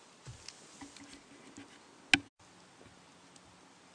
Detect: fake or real real